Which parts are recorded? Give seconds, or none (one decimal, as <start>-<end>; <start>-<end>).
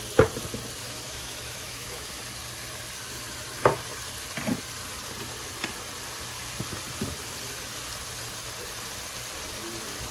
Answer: 0.0-0.8; 2.2-10.1